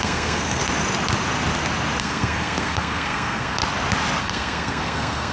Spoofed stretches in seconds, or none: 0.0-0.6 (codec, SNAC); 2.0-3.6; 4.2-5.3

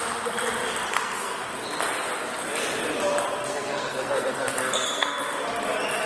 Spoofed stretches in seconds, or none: 0.9-1.5 (codec, SNAC); 3.4-5.2

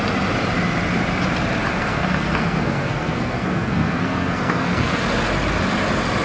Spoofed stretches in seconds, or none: 1.7-5.0 (codec, SNAC)

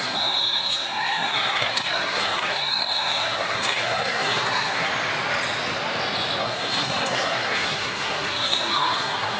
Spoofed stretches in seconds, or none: 0.0-4.9 (codec, SNAC); 6.4-9.4

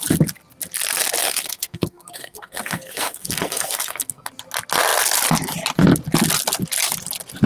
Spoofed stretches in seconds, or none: 1.2-4.3 (codec, SNAC)